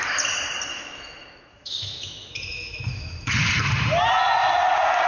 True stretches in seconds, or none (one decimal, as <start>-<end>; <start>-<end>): 0.0-0.7; 3.3-5.1